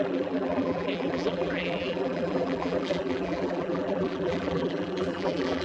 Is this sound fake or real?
fake